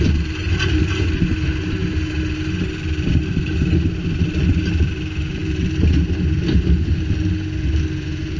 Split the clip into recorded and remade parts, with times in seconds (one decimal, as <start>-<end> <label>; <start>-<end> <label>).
0.0-8.4 recorded